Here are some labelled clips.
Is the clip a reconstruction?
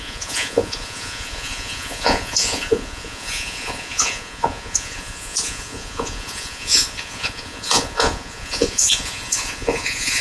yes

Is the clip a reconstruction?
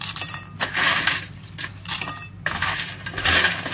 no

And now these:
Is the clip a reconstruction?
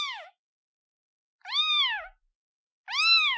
no